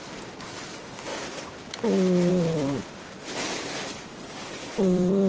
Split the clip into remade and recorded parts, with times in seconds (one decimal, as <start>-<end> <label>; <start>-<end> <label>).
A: 0.0-1.1 remade; 1.1-2.3 recorded; 2.3-5.3 remade